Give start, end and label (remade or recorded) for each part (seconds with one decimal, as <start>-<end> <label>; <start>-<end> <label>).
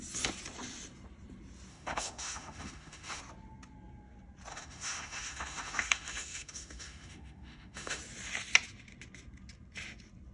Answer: 0.0-1.7 recorded; 1.7-3.2 remade; 3.2-4.5 recorded; 4.5-8.0 remade; 8.0-10.3 recorded